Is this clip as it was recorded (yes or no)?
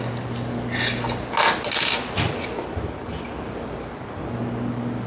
yes